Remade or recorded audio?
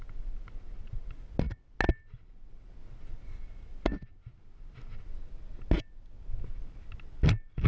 recorded